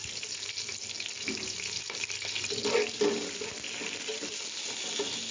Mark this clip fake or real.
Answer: real